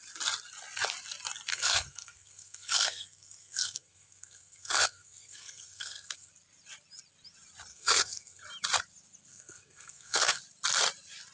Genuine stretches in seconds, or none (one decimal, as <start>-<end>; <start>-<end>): 0.0-1.5; 6.3-7.7; 8.4-9.3; 10.4-11.3